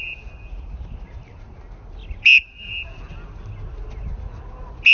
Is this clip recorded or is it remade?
recorded